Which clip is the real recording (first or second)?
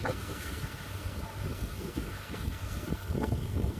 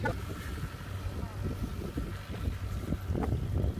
second